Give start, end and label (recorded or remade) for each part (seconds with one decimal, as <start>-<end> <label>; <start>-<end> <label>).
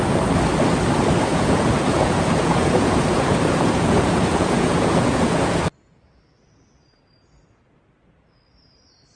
0.0-1.3 recorded; 1.3-6.2 remade; 6.2-9.2 recorded